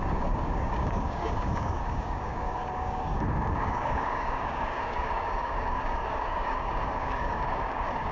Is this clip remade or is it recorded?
remade